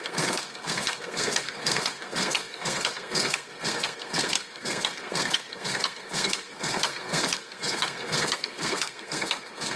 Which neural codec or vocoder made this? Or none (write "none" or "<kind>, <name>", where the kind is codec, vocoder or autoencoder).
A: codec, SNAC